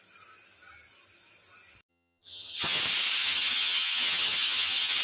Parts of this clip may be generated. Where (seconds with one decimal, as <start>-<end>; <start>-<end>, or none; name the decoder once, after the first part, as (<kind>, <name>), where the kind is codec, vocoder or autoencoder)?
1.9-2.8 (vocoder, HiFi-GAN); 3.2-5.0